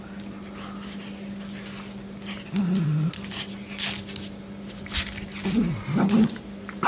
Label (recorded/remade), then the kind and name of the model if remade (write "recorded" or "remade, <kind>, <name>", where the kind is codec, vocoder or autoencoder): recorded